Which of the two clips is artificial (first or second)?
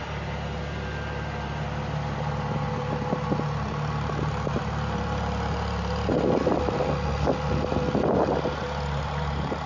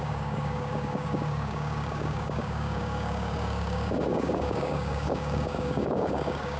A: second